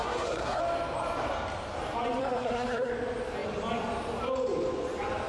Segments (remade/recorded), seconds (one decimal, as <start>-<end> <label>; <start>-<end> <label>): 0.0-0.6 remade; 0.6-2.2 recorded; 2.2-2.9 remade; 2.9-5.3 recorded